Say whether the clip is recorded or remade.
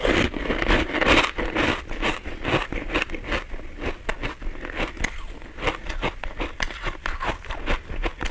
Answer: recorded